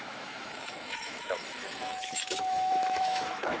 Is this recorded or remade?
remade